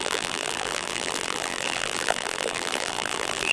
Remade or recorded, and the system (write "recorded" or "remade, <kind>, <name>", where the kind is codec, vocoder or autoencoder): remade, vocoder, BigVGAN v2